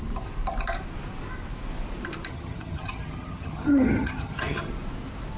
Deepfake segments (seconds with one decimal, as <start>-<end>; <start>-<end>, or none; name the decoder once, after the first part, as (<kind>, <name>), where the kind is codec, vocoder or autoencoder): 2.3-4.7 (vocoder, HiFi-GAN)